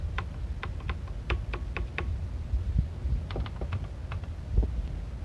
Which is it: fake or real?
real